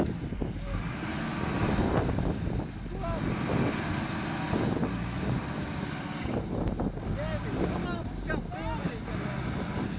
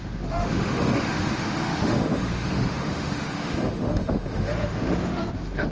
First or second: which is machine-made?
second